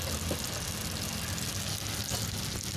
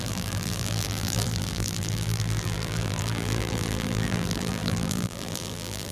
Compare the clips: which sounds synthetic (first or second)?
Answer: second